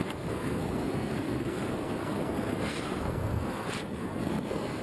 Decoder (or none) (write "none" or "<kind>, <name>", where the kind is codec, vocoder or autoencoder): codec, SNAC